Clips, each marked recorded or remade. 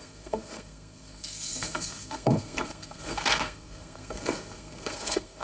remade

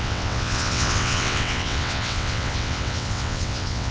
remade